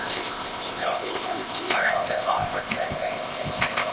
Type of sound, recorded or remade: remade